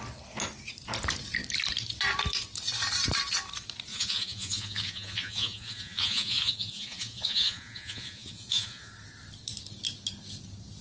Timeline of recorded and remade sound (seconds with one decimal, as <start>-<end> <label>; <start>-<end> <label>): 0.0-3.9 recorded; 3.9-8.9 remade; 8.9-10.8 recorded